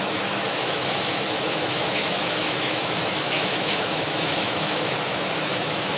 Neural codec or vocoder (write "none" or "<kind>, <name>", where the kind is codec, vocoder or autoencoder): autoencoder, DAC-VAE